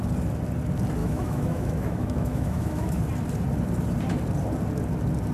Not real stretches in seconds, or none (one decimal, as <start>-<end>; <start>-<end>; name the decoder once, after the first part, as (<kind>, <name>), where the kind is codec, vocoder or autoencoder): 1.0-3.0 (autoencoder, DAC-VAE)